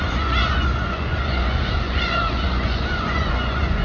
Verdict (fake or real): fake